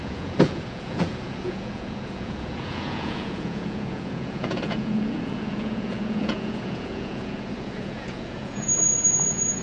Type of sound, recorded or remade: remade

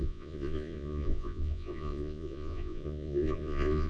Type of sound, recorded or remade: remade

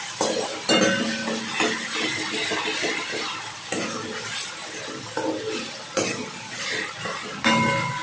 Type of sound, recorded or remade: recorded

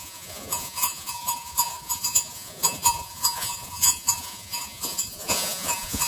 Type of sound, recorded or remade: remade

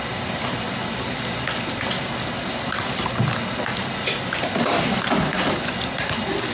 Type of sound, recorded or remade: recorded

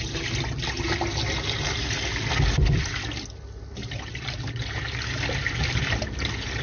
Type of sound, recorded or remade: recorded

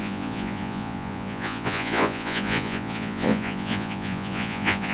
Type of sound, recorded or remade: remade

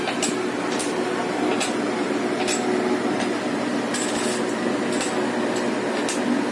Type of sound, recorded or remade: recorded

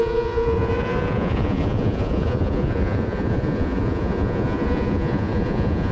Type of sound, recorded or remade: remade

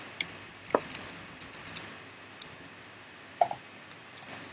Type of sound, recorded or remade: recorded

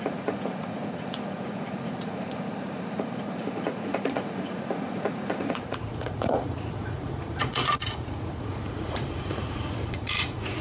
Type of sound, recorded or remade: remade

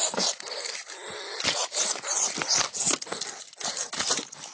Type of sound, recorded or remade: recorded